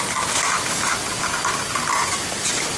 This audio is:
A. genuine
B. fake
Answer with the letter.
A